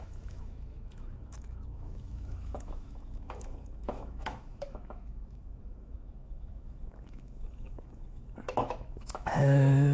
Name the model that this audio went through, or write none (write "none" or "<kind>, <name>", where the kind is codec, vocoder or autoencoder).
autoencoder, DAC-VAE